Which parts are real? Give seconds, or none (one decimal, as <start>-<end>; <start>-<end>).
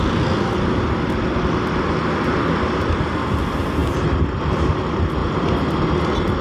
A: 0.0-6.4